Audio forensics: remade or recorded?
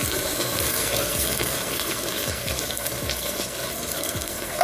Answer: remade